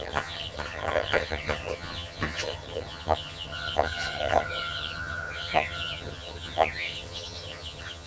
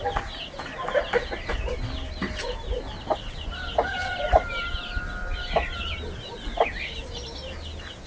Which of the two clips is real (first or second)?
second